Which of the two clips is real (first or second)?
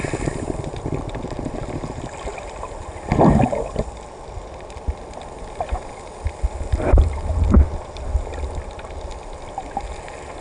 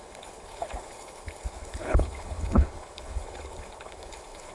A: first